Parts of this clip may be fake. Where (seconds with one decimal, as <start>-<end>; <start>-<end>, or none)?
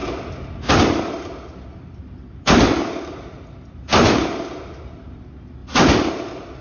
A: 5.6-6.1